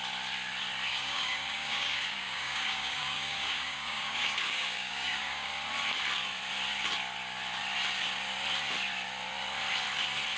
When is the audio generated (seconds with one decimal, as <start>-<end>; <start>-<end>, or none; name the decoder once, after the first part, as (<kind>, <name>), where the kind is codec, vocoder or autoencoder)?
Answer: 0.9-5.5 (codec, DAC)